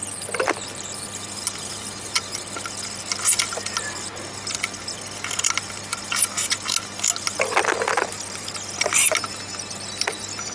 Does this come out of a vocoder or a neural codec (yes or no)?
no